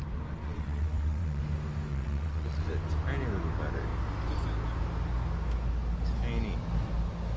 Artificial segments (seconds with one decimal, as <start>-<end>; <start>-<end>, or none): 0.4-1.4; 1.9-2.6